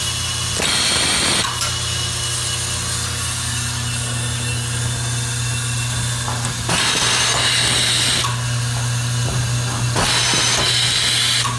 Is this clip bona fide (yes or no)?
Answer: yes